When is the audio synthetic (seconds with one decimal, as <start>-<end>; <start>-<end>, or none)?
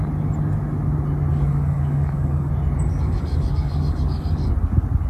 1.3-2.5; 2.9-4.5